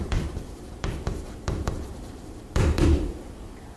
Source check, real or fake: fake